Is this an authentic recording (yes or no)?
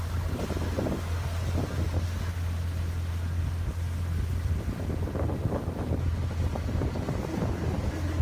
yes